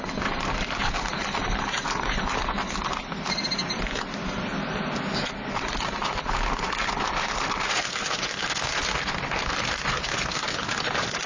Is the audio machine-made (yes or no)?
no